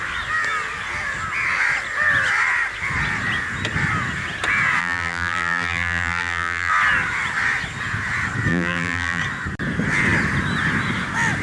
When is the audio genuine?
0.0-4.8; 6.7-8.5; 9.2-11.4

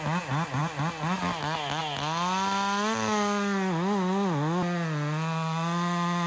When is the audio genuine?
0.0-6.3

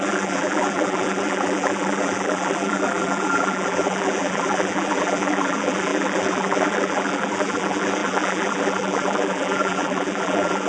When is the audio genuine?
none

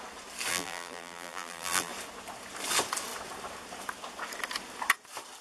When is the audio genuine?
0.0-0.5; 1.9-5.4

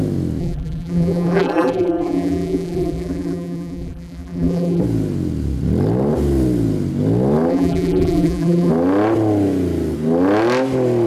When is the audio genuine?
0.0-0.4; 4.8-7.5; 8.7-11.1

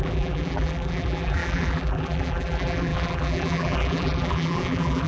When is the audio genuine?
none

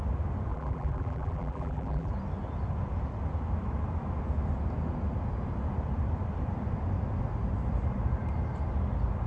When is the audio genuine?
0.0-0.5; 2.1-9.3

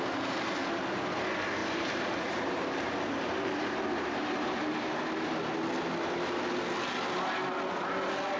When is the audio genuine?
0.0-1.6; 4.6-8.4